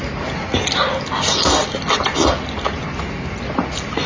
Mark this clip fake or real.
real